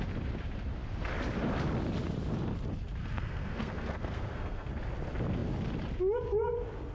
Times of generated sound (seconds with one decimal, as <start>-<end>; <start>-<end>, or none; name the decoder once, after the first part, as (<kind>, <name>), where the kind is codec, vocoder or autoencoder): 3.0-4.7 (codec, SNAC)

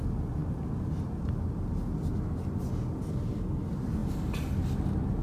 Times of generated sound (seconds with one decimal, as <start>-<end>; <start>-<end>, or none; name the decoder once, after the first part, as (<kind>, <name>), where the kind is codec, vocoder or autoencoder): none

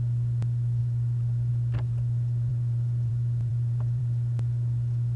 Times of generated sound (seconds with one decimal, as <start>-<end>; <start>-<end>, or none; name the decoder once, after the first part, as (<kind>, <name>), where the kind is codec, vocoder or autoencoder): 0.8-1.5 (vocoder, BigVGAN v2); 2.5-3.1; 3.5-4.0

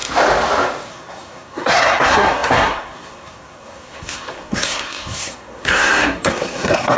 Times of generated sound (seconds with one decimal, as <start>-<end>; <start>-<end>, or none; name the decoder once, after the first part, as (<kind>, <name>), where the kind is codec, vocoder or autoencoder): 0.9-7.0 (codec, SNAC)

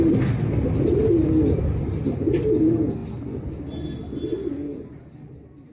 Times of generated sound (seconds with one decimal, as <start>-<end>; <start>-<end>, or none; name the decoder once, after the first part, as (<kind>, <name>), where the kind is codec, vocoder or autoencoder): none

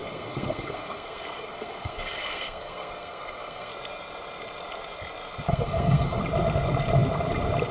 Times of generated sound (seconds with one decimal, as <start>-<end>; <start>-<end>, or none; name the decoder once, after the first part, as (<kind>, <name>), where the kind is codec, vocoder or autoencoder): 0.0-3.7 (codec, SNAC); 5.5-6.2

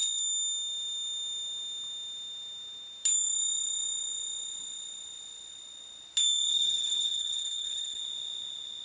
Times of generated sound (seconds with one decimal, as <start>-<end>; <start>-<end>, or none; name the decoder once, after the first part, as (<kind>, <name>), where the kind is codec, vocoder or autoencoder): 6.5-8.0 (codec, HILCodec)